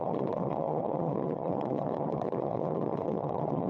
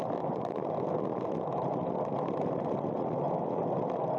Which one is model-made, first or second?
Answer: first